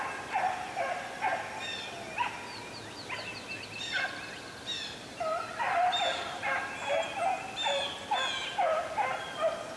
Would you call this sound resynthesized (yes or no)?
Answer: no